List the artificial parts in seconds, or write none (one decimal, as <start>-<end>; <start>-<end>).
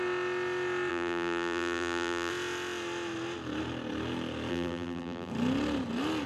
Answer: 0.9-2.3; 4.5-5.3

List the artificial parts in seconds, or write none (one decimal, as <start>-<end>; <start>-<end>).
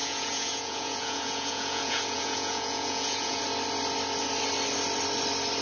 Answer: 0.0-3.4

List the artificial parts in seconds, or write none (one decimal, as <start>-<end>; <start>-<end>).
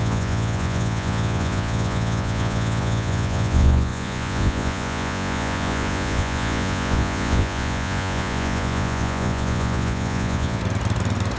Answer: 0.0-10.6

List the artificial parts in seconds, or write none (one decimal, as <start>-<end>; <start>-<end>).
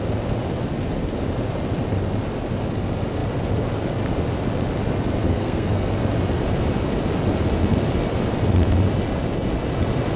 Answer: 5.3-5.9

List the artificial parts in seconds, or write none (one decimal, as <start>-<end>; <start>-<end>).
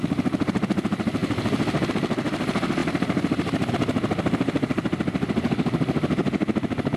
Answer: none